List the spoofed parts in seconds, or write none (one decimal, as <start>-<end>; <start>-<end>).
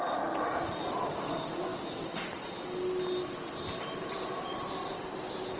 0.0-1.7; 4.1-5.6